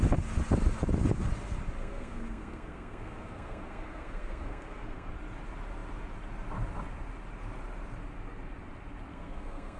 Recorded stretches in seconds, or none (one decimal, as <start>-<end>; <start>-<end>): 0.0-1.8; 5.1-9.1